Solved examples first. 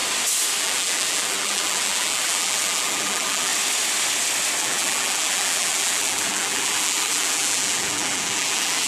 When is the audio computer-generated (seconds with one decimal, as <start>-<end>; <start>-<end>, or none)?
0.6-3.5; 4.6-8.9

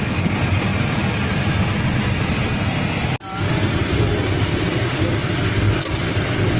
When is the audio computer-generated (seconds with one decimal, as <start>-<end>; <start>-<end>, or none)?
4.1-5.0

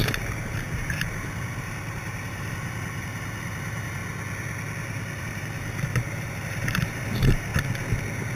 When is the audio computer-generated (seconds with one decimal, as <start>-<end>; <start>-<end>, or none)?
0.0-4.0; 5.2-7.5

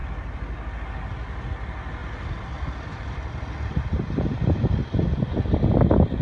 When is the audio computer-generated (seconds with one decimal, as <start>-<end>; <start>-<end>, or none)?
0.0-0.8; 2.0-5.7

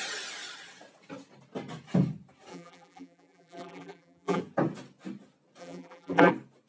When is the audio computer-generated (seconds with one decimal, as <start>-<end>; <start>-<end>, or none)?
2.5-4.4; 5.6-6.3